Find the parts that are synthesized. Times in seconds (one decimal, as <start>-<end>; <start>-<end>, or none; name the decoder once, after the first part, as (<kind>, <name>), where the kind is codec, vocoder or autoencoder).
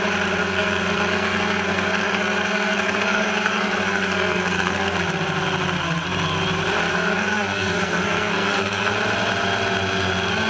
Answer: 0.4-5.1 (codec, SNAC); 6.9-8.9